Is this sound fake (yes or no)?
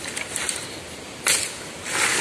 yes